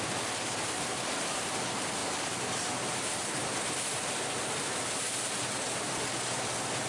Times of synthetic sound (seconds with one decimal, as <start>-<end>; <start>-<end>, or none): none